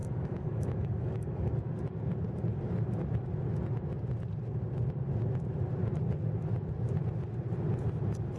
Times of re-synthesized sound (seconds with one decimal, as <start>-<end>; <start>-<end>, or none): 0.0-1.5